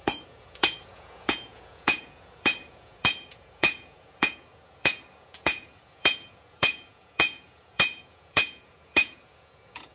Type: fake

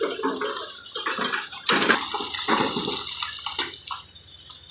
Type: real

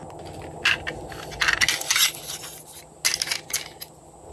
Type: real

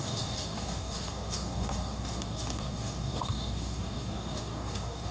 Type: fake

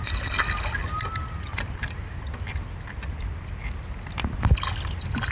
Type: real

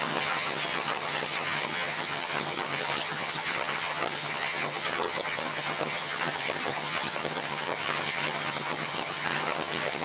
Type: fake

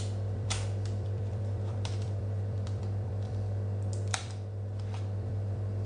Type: fake